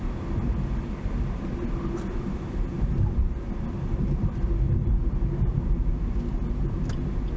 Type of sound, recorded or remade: recorded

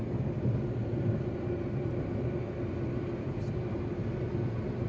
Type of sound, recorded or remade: recorded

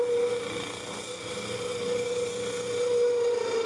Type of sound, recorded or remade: recorded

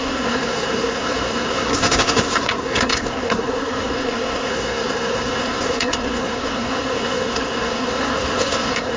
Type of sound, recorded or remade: remade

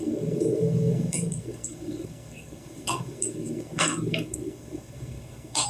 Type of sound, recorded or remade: remade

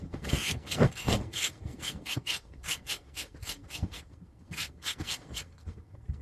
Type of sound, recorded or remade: remade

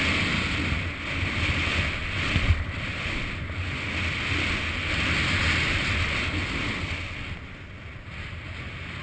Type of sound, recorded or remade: recorded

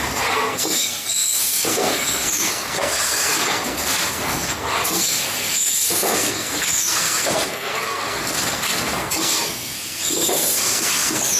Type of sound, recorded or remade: remade